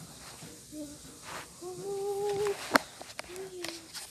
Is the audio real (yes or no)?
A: no